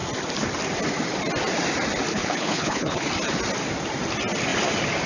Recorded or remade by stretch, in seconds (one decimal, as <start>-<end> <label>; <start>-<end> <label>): 0.0-2.1 recorded; 2.1-3.1 remade; 3.1-5.1 recorded